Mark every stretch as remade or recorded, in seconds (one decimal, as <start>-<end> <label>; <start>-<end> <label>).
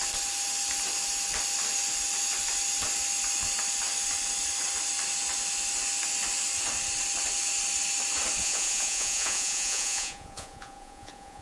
0.0-8.4 recorded; 8.4-11.4 remade